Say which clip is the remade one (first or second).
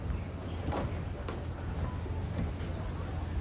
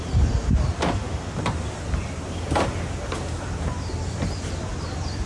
second